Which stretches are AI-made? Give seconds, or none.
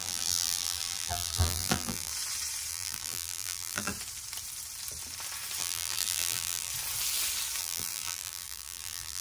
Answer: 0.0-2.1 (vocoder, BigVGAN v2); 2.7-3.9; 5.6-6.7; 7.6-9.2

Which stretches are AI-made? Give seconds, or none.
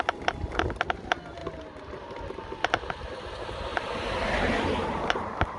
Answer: 3.7-5.6 (vocoder, BigVGAN v2)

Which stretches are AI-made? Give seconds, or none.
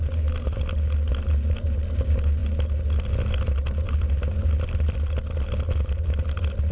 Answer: none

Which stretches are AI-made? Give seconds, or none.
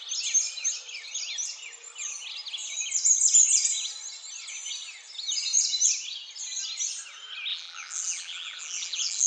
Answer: 7.5-9.3 (vocoder, BigVGAN v2)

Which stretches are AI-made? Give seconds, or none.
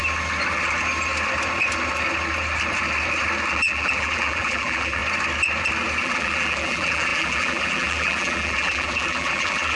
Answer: 3.5-5.0 (vocoder, BigVGAN v2); 6.0-9.8